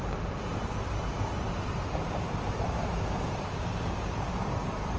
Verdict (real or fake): real